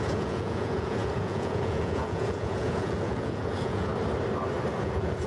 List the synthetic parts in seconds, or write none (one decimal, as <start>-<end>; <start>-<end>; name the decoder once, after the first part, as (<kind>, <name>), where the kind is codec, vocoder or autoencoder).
0.0-3.9 (vocoder, Vocos); 4.8-5.3